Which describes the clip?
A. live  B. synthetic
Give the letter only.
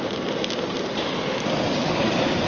A